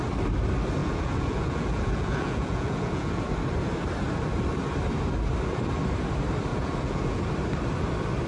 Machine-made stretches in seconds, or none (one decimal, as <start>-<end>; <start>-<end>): 0.8-3.2; 6.5-7.2